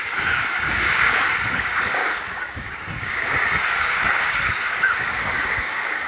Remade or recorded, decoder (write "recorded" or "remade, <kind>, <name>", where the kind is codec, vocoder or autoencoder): remade, codec, DAC